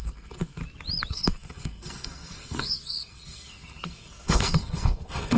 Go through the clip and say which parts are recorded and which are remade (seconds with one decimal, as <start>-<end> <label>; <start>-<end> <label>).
0.0-0.6 remade; 0.6-1.1 recorded; 1.1-5.4 remade